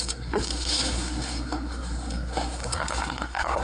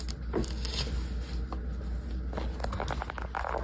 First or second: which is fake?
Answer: first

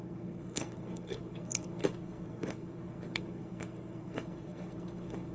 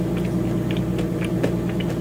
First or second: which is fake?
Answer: first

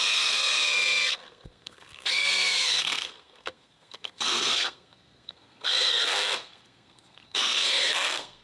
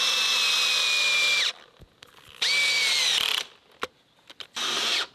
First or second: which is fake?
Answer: first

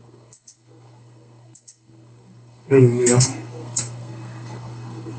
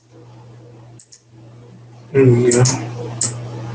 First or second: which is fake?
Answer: first